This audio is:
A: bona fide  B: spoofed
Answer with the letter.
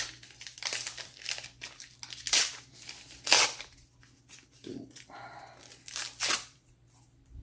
A